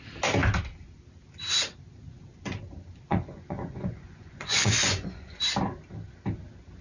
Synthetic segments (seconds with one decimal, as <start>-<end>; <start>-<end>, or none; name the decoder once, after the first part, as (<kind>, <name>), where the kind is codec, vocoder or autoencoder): 3.1-5.4 (vocoder, Vocos)